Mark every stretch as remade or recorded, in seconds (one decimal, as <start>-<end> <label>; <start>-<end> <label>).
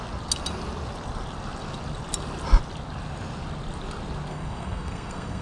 0.0-4.3 recorded; 4.3-5.4 remade